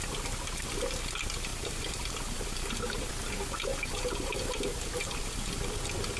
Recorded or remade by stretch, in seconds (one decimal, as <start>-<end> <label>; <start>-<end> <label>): 0.0-1.5 recorded; 1.5-3.1 remade; 3.1-3.7 recorded; 3.7-5.7 remade; 5.7-6.2 recorded